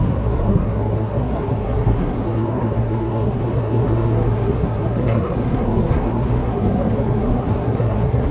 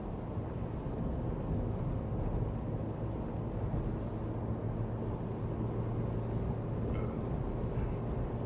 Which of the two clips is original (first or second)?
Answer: second